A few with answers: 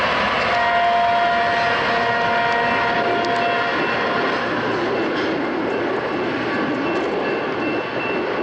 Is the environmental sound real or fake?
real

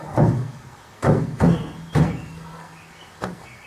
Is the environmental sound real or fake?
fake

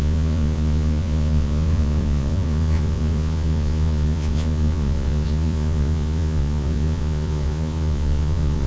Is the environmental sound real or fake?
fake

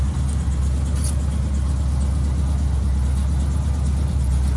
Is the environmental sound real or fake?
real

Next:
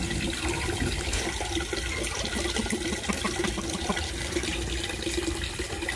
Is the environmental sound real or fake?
real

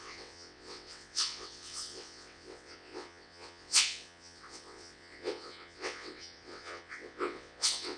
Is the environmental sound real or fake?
fake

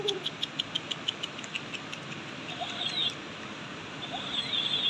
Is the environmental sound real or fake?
fake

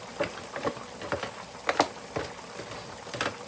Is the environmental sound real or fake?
real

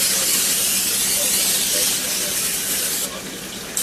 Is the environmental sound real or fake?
real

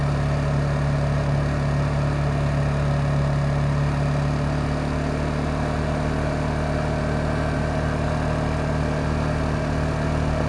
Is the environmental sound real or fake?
real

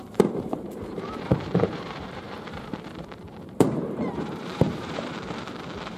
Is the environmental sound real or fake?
fake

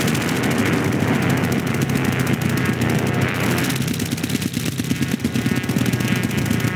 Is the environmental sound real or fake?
real